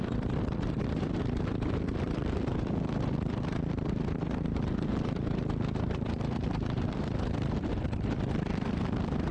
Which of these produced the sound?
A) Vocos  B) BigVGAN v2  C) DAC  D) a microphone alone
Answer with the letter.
B